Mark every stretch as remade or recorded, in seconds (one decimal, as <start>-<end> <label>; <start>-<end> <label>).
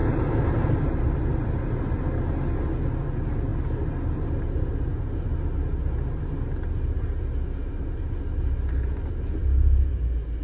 0.0-10.4 recorded